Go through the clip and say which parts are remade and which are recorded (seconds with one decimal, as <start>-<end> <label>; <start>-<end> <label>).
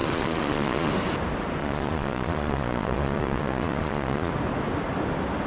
0.0-0.9 remade; 0.9-1.6 recorded; 1.6-4.3 remade; 4.3-5.5 recorded